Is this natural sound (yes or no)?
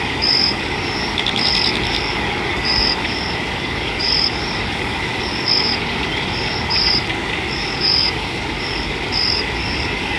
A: no